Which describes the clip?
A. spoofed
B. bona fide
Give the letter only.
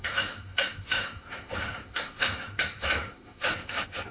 A